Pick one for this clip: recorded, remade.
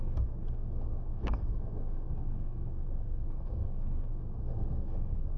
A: remade